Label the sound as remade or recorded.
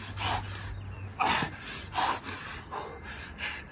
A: recorded